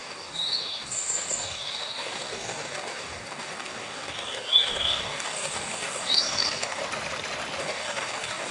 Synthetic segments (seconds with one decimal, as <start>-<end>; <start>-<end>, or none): 0.0-6.8; 7.6-8.5